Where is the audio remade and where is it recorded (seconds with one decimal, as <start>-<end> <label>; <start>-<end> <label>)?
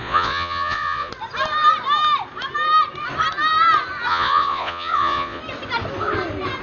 0.0-1.1 remade; 1.1-4.1 recorded; 4.1-5.4 remade; 5.4-6.6 recorded